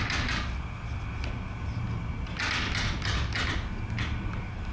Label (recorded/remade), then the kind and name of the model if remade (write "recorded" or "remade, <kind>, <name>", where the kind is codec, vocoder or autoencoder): recorded